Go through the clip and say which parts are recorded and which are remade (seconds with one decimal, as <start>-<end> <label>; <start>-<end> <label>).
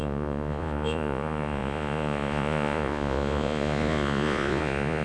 0.0-5.0 remade